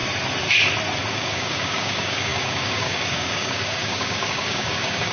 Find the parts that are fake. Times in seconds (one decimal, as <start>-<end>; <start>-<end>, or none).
1.1-5.1